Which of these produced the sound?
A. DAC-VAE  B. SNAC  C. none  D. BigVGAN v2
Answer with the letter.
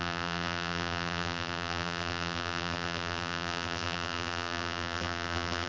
D